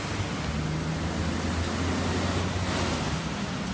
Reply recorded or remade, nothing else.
recorded